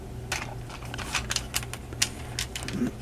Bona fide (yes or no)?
yes